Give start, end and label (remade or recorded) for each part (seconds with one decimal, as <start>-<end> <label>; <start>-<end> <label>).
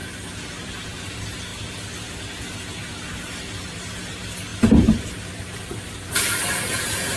0.0-1.0 remade; 1.0-1.5 recorded; 1.5-2.4 remade; 2.4-4.5 recorded; 4.5-5.1 remade; 5.1-7.2 recorded